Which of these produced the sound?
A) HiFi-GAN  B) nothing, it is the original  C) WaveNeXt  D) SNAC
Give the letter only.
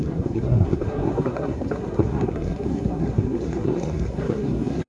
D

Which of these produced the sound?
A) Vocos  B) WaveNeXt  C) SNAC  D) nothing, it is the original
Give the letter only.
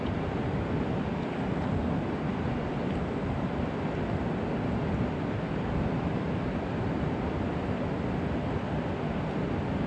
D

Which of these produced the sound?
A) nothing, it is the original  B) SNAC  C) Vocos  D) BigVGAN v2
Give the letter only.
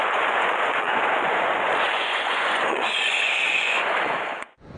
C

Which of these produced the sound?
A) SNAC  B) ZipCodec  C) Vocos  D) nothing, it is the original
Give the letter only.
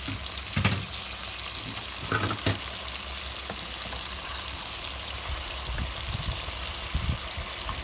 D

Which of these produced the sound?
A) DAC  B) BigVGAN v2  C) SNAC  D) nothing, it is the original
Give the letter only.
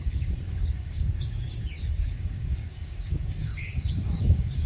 A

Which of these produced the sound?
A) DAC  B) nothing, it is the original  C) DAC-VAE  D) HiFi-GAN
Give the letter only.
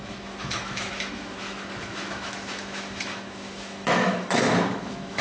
C